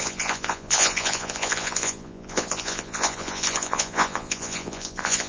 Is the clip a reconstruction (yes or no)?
yes